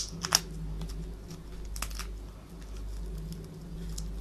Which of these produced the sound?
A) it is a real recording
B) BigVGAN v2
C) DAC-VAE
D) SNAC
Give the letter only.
A